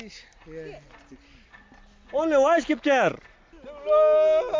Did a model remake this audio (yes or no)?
no